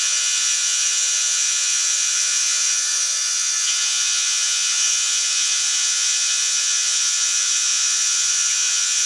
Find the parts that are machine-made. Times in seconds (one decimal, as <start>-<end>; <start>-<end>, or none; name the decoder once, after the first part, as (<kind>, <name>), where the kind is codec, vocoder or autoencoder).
0.0-9.1 (vocoder, Vocos)